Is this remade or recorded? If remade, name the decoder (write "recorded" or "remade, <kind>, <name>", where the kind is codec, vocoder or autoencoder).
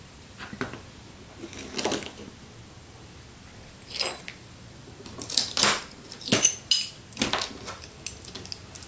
recorded